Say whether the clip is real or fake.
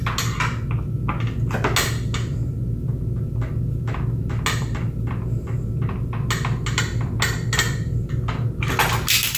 real